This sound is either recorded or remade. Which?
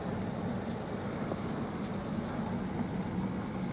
remade